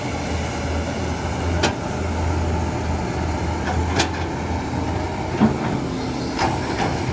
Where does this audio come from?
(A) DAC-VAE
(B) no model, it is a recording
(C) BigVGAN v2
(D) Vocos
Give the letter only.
B